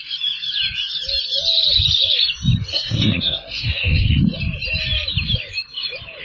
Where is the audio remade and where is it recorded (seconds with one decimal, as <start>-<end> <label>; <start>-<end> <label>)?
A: 0.0-2.7 recorded; 2.7-4.2 remade; 4.2-6.2 recorded